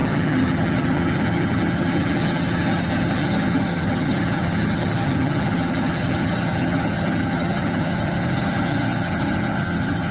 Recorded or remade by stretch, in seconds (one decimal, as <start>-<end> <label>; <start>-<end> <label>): 0.0-10.1 remade